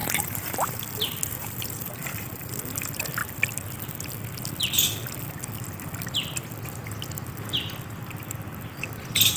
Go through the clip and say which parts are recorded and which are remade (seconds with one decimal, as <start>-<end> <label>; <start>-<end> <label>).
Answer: 0.0-3.2 remade; 3.2-8.0 recorded; 8.0-9.4 remade